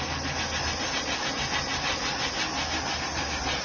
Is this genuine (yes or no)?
yes